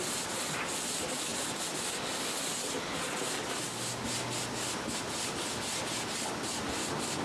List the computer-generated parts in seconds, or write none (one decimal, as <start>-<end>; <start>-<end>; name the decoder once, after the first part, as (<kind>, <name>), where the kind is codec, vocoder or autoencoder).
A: none